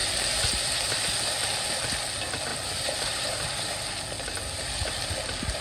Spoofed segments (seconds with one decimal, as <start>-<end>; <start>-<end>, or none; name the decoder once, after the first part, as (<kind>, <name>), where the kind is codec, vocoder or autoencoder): 2.5-3.2 (vocoder, BigVGAN v2)